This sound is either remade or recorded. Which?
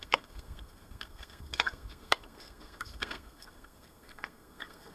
remade